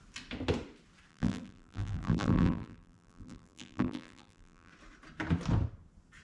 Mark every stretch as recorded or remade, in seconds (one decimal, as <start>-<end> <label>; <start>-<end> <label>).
0.0-1.1 recorded; 1.1-4.7 remade; 4.7-6.2 recorded